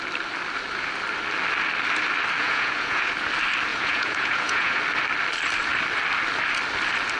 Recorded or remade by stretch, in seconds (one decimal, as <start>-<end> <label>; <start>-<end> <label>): 0.0-2.4 recorded; 2.4-3.1 remade; 3.1-3.7 recorded; 3.7-4.8 remade; 4.8-7.2 recorded

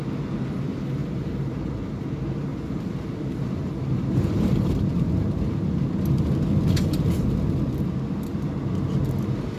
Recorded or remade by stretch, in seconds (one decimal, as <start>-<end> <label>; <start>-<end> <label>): 0.0-1.0 recorded; 1.0-2.0 remade; 2.0-2.5 recorded; 2.5-4.7 remade; 4.7-9.6 recorded